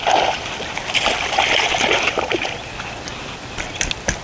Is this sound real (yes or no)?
yes